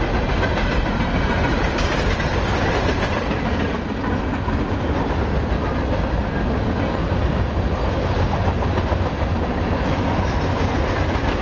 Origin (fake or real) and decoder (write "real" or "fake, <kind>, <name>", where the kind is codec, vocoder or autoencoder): real